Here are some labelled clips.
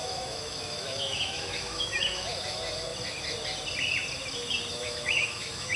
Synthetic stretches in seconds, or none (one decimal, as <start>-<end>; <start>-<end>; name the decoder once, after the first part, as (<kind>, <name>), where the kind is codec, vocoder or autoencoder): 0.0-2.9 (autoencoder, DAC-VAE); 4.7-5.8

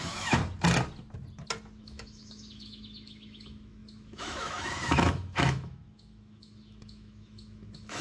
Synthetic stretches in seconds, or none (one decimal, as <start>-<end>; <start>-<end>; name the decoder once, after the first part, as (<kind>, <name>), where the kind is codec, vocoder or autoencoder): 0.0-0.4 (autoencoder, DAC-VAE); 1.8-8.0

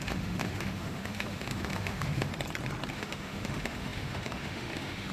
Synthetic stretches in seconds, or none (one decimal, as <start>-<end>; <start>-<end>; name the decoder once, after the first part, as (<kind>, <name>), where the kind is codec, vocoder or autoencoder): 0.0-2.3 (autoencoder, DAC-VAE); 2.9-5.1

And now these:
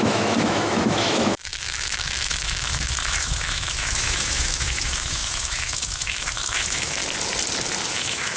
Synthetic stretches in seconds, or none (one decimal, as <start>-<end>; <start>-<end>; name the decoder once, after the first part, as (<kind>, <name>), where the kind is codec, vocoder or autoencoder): 0.0-7.0 (autoencoder, DAC-VAE); 7.9-8.4

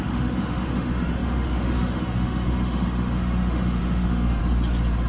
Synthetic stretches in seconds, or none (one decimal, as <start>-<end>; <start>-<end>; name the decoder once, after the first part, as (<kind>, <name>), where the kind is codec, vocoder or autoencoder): 0.0-4.4 (autoencoder, DAC-VAE)

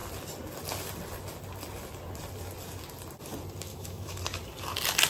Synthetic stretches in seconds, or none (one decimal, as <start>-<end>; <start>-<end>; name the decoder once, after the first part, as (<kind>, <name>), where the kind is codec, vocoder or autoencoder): 3.7-4.2 (autoencoder, DAC-VAE)

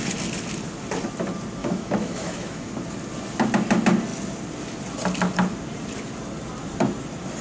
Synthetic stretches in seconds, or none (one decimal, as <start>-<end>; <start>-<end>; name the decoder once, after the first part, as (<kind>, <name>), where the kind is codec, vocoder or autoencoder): 1.6-2.7 (autoencoder, DAC-VAE)

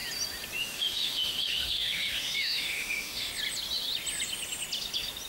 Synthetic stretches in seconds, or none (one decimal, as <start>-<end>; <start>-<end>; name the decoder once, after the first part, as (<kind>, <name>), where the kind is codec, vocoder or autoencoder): 0.6-3.3 (autoencoder, DAC-VAE)